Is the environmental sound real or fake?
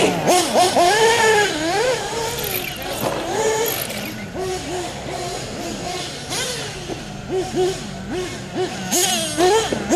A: real